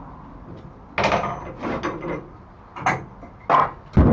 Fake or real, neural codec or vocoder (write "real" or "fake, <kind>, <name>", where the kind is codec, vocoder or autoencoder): real